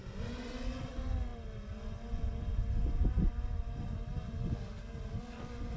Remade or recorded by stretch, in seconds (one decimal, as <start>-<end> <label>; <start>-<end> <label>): 0.0-5.8 recorded